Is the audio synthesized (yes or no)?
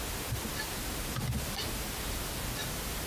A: no